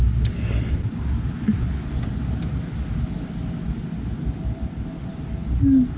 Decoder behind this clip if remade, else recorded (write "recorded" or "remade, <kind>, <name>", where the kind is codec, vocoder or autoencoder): recorded